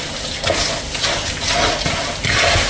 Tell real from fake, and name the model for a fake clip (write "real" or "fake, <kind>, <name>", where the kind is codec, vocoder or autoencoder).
real